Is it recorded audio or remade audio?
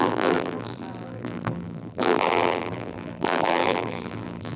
remade